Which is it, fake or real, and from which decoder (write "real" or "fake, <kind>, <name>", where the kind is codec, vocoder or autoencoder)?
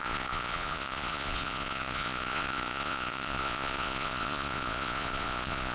fake, vocoder, Vocos